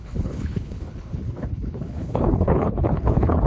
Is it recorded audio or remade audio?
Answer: remade